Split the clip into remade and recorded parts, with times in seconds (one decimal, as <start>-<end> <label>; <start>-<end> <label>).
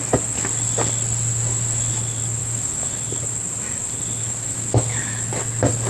0.0-2.4 recorded; 2.4-3.0 remade; 3.0-4.2 recorded; 4.2-5.3 remade; 5.3-5.9 recorded